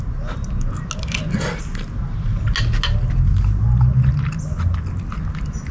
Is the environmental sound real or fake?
real